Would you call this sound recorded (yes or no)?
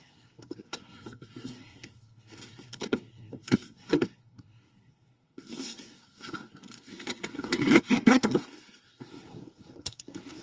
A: no